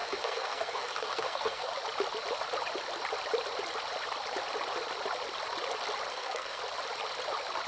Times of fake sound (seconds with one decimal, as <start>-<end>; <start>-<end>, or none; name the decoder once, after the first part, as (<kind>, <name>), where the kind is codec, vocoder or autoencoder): 0.0-1.7 (codec, SNAC); 6.1-6.6